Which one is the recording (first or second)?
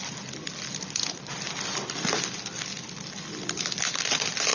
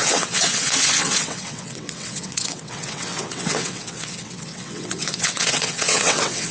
first